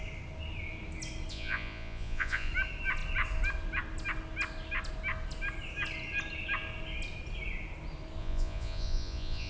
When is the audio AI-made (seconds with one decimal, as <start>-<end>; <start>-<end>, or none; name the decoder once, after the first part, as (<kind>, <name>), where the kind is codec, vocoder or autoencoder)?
1.3-2.5 (vocoder, Vocos); 8.2-9.5